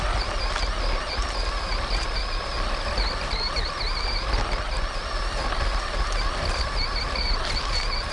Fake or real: real